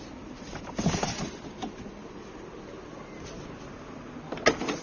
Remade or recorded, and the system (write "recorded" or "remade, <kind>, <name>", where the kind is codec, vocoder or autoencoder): recorded